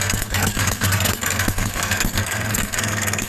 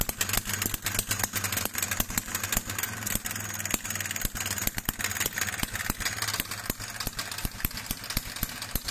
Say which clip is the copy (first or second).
first